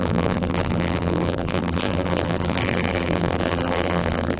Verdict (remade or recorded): remade